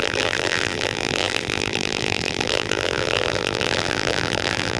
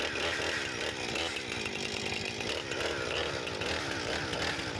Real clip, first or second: second